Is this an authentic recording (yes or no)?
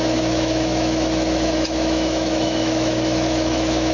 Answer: no